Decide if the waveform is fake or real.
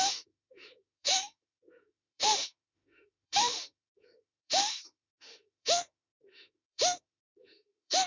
fake